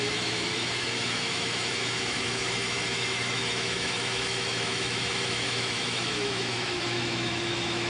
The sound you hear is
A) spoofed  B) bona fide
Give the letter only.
A